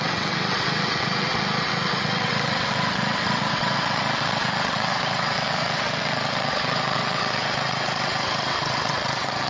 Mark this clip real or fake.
fake